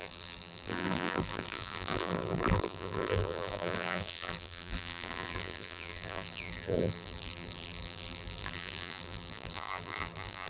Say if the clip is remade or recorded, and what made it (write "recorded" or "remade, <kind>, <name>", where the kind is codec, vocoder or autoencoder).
remade, vocoder, BigVGAN v2